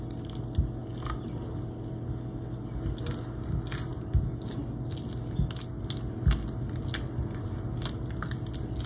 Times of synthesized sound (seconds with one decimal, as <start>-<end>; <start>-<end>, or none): none